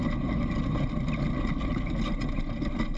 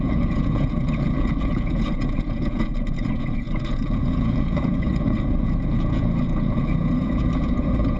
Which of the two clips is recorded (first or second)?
first